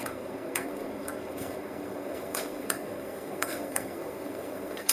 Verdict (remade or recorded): remade